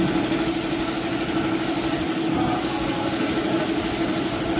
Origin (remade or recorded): recorded